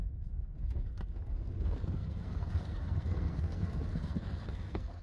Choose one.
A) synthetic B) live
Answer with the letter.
A